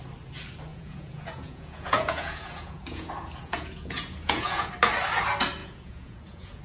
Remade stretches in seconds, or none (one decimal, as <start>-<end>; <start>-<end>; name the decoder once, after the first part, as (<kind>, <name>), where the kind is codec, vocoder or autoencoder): 0.7-4.7 (vocoder, Vocos); 5.6-6.6